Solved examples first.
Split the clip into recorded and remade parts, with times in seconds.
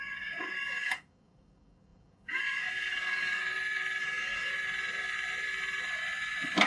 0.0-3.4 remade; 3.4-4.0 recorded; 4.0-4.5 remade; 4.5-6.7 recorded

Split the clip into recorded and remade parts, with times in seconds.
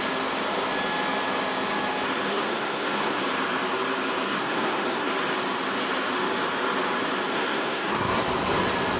0.0-2.3 recorded; 2.3-3.2 remade; 3.2-4.4 recorded; 4.4-5.1 remade; 5.1-7.3 recorded; 7.3-8.2 remade; 8.2-9.0 recorded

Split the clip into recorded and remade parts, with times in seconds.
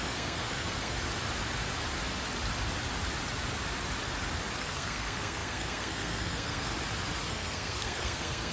0.0-1.0 remade; 1.0-4.6 recorded; 4.6-6.7 remade; 6.7-7.3 recorded; 7.3-8.5 remade